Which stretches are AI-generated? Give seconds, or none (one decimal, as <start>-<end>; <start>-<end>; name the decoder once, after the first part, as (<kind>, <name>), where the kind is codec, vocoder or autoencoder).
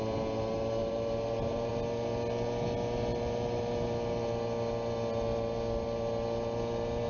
0.8-1.7 (vocoder, BigVGAN v2)